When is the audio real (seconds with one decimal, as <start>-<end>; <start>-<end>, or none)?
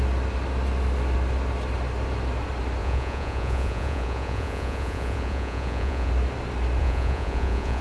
0.0-2.8; 6.1-6.8